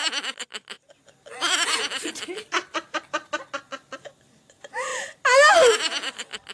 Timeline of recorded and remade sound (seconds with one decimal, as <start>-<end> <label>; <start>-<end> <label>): 0.0-6.5 recorded